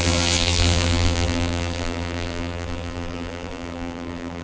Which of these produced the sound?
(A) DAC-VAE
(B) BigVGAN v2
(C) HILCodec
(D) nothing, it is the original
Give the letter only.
B